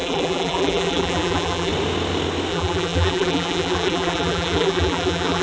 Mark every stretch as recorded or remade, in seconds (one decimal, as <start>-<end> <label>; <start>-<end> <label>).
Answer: 0.0-1.7 remade; 1.7-2.5 recorded; 2.5-5.4 remade